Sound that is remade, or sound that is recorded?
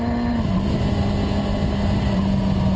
recorded